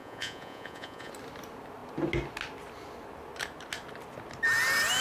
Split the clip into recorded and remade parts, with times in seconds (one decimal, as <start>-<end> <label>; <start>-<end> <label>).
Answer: 0.0-1.1 remade; 1.1-5.0 recorded